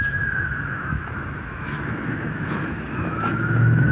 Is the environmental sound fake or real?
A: fake